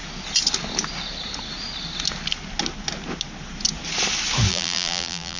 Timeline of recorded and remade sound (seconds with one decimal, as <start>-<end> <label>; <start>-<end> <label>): 0.0-4.5 recorded; 4.5-5.4 remade